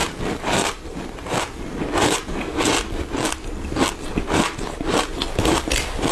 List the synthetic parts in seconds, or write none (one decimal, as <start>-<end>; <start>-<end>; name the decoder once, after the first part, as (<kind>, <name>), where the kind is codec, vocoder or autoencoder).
none